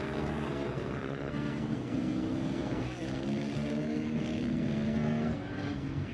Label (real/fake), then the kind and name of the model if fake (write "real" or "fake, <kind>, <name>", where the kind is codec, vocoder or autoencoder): fake, codec, SNAC